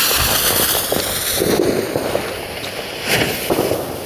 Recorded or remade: recorded